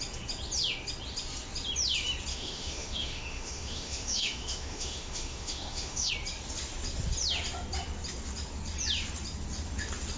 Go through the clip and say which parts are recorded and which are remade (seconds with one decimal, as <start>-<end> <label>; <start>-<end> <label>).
0.0-2.3 recorded; 2.3-6.1 remade; 6.1-10.2 recorded